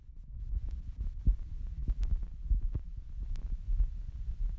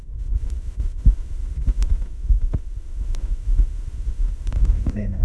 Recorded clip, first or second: first